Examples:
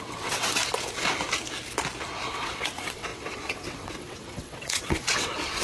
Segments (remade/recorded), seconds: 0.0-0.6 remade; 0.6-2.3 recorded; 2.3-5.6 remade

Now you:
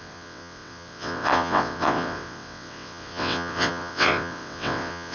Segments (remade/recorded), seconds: 0.0-5.1 remade